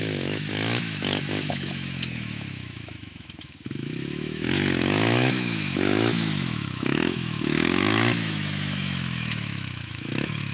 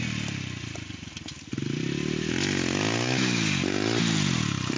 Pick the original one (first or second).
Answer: second